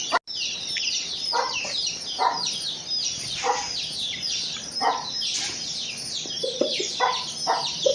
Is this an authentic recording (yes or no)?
yes